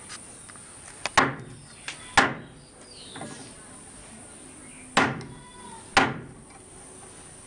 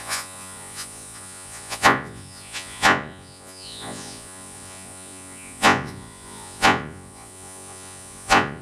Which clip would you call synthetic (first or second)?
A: second